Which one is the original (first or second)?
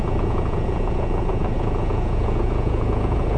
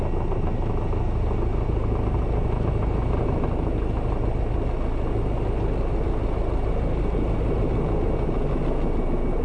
second